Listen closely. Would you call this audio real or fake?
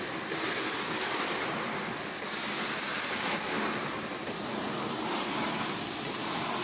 fake